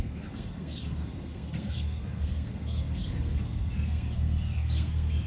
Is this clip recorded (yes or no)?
no